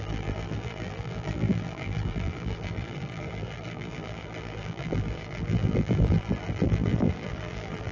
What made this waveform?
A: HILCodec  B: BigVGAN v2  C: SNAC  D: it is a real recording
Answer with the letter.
B